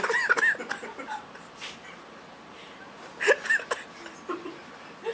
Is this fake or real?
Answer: real